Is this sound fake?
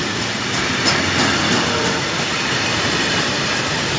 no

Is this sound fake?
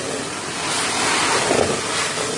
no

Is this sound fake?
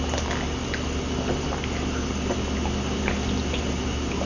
no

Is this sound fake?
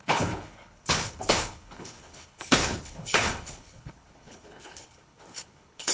yes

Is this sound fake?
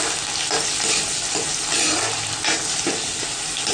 no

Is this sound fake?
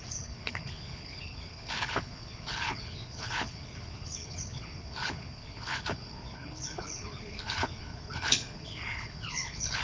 yes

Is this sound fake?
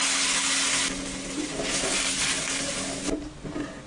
no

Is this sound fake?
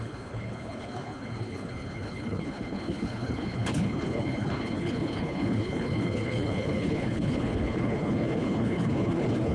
yes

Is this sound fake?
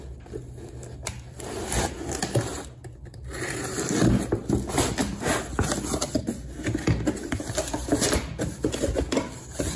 no